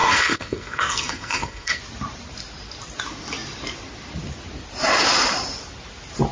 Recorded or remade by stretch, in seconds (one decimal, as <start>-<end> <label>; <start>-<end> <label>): 0.0-1.8 remade; 1.8-6.3 recorded